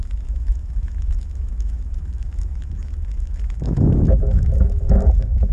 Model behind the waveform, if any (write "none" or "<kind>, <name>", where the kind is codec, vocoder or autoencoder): autoencoder, DAC-VAE